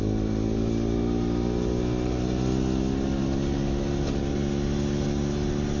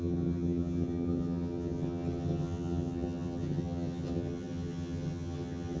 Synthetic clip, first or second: second